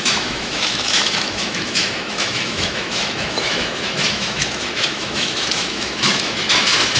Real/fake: fake